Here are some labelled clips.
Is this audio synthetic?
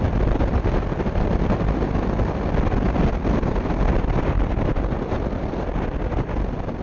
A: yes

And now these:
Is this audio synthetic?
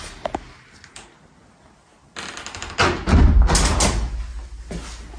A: no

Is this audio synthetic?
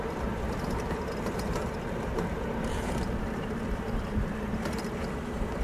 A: yes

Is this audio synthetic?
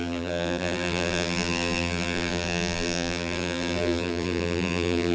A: yes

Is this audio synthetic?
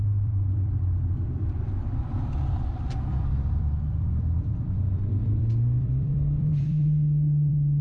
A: yes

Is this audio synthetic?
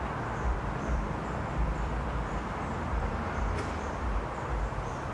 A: yes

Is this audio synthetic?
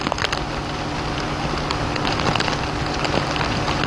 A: no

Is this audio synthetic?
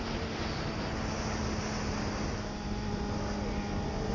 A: no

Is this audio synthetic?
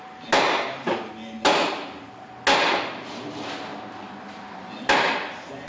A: no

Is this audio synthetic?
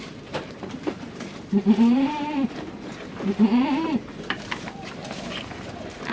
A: yes